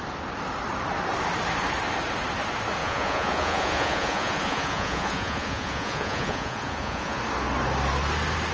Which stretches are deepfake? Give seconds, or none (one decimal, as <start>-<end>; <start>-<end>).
2.8-7.2